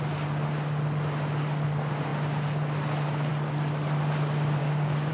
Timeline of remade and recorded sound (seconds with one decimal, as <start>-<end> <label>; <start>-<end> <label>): 0.0-4.6 recorded; 4.6-5.1 remade